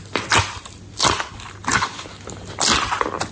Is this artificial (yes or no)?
no